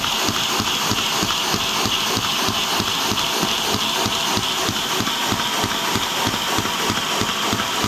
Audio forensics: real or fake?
real